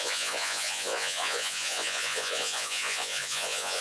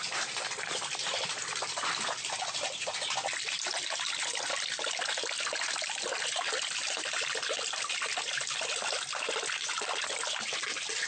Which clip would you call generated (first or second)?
first